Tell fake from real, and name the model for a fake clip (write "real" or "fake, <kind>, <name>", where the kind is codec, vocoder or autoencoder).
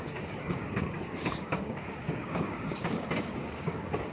fake, codec, DAC